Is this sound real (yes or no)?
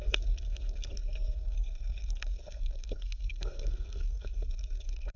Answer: no